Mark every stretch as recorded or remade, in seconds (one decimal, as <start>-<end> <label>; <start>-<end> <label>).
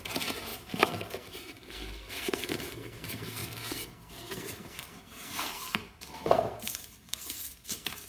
0.0-8.1 remade